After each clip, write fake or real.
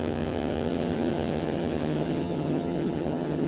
fake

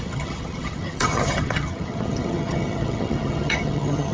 fake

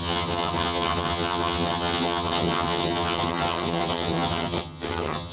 fake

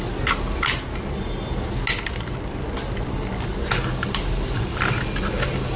real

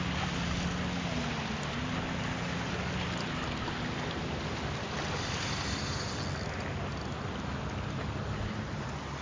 real